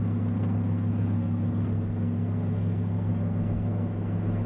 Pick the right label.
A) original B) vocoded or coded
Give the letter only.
B